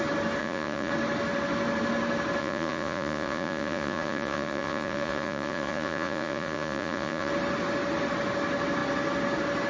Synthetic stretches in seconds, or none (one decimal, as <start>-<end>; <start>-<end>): 0.4-0.9; 2.4-7.3